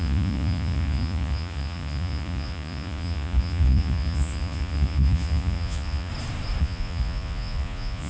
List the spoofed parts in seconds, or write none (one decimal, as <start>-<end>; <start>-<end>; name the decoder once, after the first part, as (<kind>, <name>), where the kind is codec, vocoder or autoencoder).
0.0-6.1 (vocoder, Vocos); 6.6-8.1